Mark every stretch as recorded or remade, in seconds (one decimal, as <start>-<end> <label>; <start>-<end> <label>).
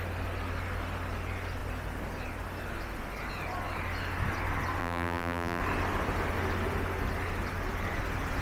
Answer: 0.0-4.8 recorded; 4.8-5.6 remade; 5.6-8.4 recorded